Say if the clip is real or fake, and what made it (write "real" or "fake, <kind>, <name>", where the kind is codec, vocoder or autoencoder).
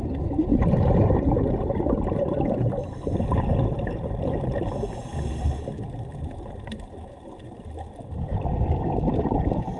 real